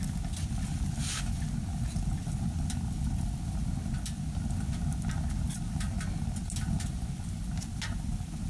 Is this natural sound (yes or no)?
yes